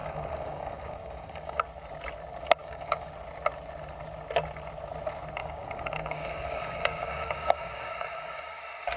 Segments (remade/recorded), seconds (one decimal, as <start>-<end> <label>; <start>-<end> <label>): 0.0-1.6 remade; 1.6-2.6 recorded; 2.6-3.1 remade; 3.1-5.4 recorded; 5.4-8.6 remade; 8.6-9.0 recorded